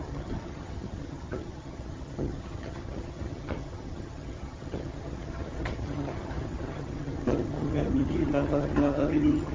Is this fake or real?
fake